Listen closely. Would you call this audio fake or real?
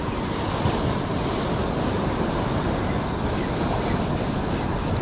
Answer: real